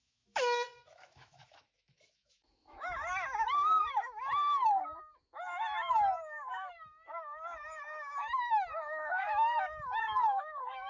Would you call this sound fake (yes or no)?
yes